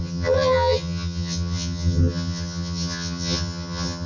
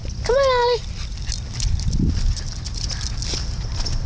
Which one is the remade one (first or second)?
first